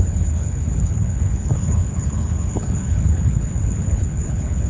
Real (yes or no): no